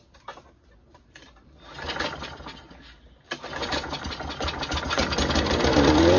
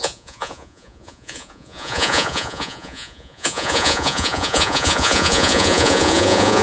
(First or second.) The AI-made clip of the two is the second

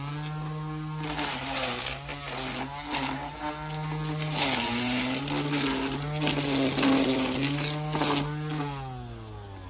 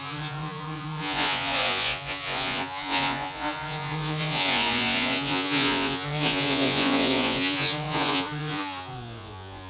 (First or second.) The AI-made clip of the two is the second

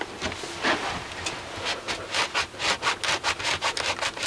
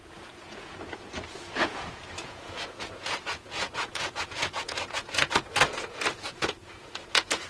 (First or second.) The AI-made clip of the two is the second